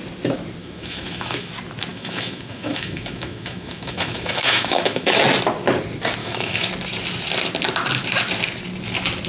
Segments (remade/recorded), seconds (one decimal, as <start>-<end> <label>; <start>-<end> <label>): 0.0-0.6 recorded; 0.6-1.5 remade; 1.5-1.9 recorded; 1.9-5.2 remade; 5.2-6.2 recorded; 6.2-6.7 remade; 6.7-9.3 recorded